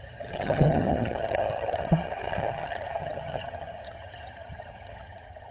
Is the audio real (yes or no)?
no